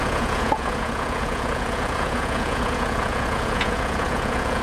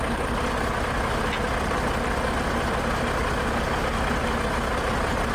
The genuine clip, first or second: second